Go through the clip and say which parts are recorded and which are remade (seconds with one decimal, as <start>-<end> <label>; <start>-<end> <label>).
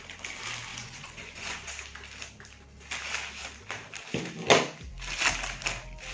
0.0-0.7 recorded; 0.7-1.7 remade; 1.7-6.1 recorded